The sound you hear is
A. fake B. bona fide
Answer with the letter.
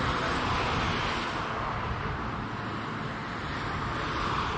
B